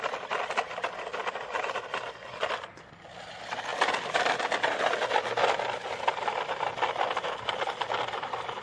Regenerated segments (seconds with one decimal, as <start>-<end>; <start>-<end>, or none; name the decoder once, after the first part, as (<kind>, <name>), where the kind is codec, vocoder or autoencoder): none